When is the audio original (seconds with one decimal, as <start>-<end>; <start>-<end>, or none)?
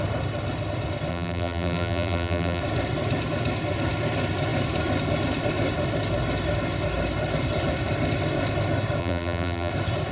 0.0-1.1; 2.6-9.0; 9.7-10.1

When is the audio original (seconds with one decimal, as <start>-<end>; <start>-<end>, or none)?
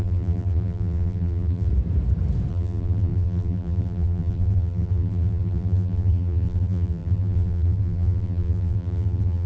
1.7-2.5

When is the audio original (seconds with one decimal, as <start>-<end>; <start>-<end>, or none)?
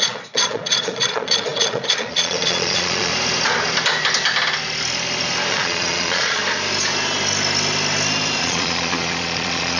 3.1-5.5; 6.4-8.4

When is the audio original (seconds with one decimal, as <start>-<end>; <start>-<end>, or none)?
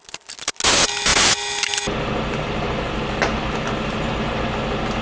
0.5-5.0